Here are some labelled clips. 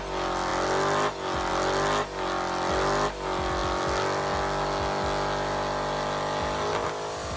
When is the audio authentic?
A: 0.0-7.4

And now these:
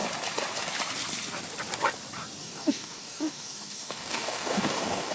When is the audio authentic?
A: 0.0-2.4

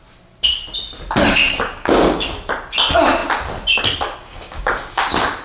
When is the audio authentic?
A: 0.0-1.4; 2.3-4.2; 5.0-5.4

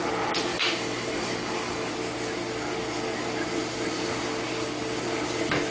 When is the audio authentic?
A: 0.0-0.5; 1.9-5.7